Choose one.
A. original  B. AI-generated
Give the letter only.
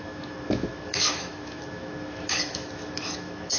B